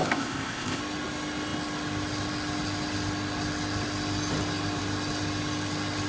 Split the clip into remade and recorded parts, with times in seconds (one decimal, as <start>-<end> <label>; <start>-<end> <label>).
0.0-0.8 remade; 0.8-6.1 recorded